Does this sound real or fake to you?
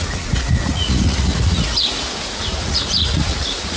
fake